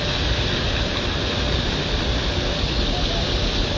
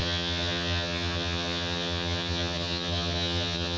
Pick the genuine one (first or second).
first